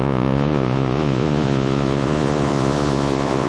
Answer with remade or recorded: remade